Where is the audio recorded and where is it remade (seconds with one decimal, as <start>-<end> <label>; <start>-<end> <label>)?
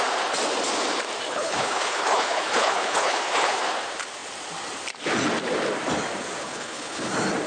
0.0-1.3 recorded; 1.3-3.6 remade; 3.6-6.4 recorded; 6.4-7.1 remade; 7.1-7.5 recorded